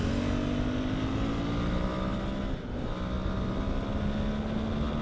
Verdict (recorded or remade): recorded